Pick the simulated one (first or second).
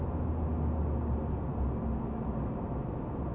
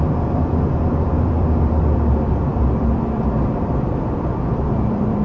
second